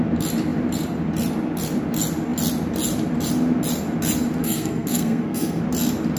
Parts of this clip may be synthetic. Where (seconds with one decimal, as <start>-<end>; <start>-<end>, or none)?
4.4-5.6